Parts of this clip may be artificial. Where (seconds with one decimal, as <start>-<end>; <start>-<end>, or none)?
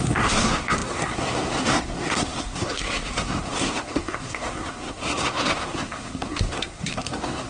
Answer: 0.0-7.5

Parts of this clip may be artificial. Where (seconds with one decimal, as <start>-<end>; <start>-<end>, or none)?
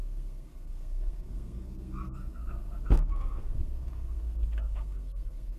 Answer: 0.0-5.6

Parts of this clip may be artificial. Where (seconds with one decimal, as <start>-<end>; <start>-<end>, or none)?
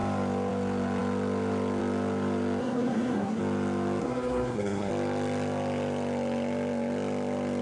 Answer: 2.6-3.4; 4.0-4.9